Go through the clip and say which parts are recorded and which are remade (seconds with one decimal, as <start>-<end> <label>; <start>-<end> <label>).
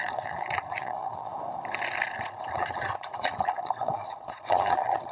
0.0-1.3 remade; 1.3-2.5 recorded; 2.5-5.1 remade